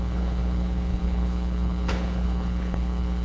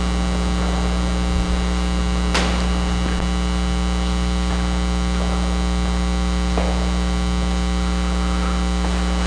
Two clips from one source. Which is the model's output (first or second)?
first